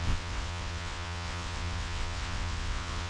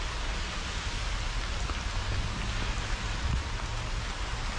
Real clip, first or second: second